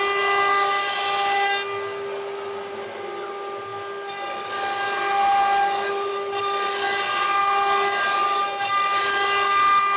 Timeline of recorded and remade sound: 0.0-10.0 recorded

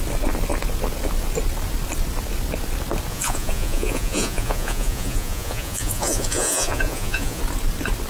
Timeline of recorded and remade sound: 0.0-3.1 recorded; 3.1-7.4 remade; 7.4-8.1 recorded